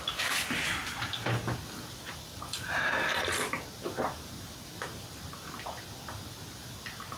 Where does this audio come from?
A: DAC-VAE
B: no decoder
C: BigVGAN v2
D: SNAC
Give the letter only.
C